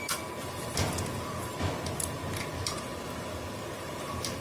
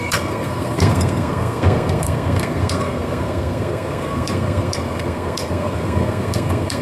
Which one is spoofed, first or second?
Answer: second